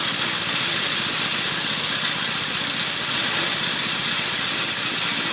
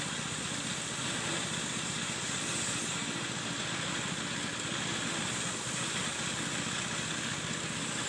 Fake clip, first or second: first